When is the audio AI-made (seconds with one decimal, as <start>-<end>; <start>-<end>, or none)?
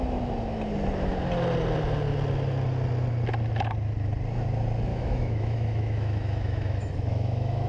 4.9-7.7